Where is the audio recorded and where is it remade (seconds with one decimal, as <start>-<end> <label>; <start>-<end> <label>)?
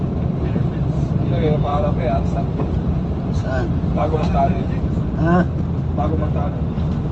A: 0.0-1.7 remade; 1.7-2.6 recorded; 2.6-3.4 remade; 3.4-7.1 recorded